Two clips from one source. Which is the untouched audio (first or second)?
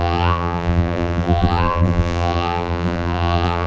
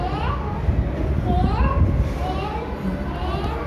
second